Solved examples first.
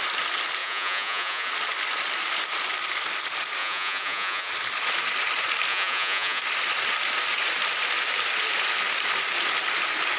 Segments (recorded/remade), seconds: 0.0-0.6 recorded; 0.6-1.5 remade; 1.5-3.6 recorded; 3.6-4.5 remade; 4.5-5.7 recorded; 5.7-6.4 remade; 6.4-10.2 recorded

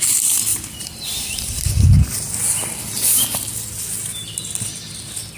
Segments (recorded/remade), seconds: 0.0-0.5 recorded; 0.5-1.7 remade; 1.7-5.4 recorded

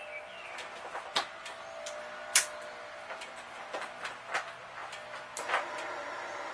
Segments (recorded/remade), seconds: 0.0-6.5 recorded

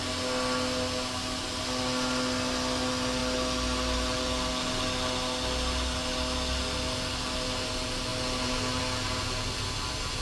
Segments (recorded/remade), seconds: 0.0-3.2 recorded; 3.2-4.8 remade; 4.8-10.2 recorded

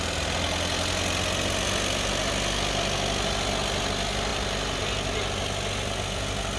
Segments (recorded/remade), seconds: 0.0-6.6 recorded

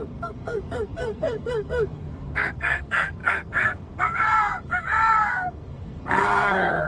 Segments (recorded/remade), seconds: 0.0-6.9 remade

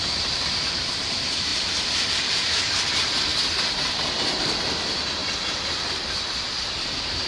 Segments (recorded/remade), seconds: 0.0-1.5 remade; 1.5-2.1 recorded; 2.1-5.2 remade; 5.2-5.9 recorded; 5.9-7.3 remade

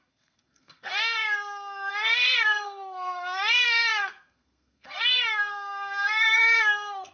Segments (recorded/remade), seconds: 0.0-1.2 remade; 1.2-1.9 recorded; 1.9-7.1 remade